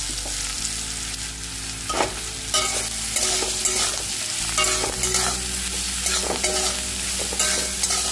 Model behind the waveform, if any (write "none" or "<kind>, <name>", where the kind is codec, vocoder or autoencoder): none